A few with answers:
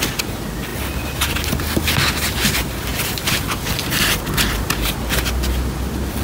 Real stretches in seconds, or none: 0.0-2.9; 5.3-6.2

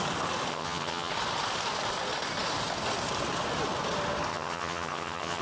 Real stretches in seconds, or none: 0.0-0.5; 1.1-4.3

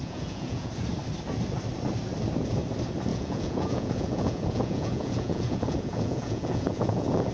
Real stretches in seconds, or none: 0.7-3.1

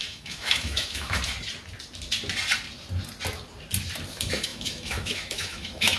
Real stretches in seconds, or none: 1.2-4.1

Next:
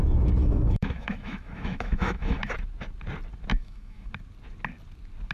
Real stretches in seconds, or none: 0.0-0.4; 2.5-3.5; 4.1-5.3